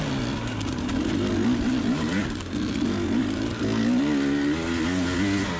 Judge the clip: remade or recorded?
recorded